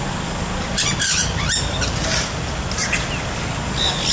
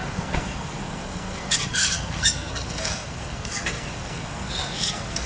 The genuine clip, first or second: first